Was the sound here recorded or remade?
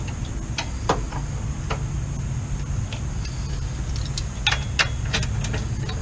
recorded